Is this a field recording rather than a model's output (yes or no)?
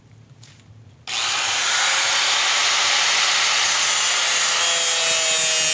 yes